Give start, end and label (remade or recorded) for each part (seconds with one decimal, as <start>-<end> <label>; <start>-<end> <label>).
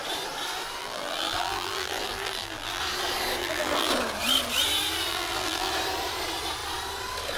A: 0.0-0.8 recorded; 0.8-2.8 remade; 2.8-3.4 recorded; 3.4-3.9 remade; 3.9-5.1 recorded; 5.1-5.7 remade; 5.7-7.4 recorded